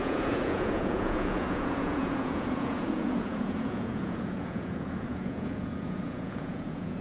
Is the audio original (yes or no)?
no